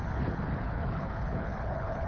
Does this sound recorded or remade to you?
remade